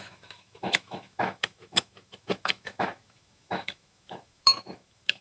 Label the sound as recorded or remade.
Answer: remade